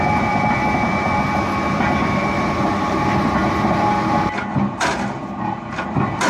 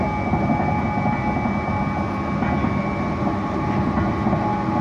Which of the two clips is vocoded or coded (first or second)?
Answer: first